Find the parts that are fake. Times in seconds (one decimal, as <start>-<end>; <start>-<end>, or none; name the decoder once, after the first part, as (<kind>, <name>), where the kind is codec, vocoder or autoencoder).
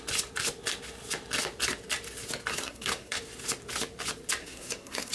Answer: 2.5-3.2 (codec, SNAC); 4.4-5.1